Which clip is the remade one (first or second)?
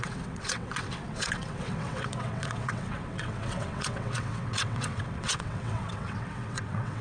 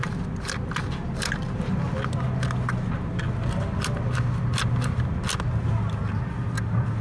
first